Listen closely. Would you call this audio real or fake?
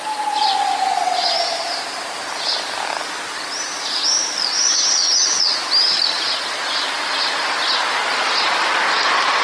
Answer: real